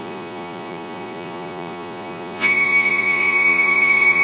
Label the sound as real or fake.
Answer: fake